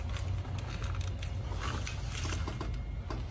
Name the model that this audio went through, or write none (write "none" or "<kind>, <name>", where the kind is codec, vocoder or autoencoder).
none